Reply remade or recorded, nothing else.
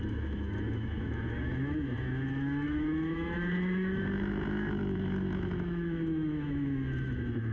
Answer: remade